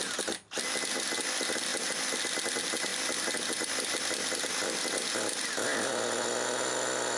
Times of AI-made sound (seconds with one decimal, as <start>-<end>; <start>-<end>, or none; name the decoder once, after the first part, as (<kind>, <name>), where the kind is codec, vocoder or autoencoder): none